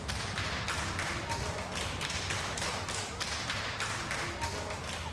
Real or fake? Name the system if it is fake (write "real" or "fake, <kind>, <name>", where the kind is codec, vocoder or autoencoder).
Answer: real